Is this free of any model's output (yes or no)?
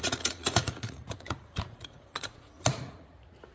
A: no